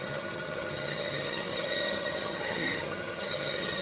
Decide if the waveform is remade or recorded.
remade